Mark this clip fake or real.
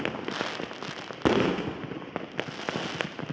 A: real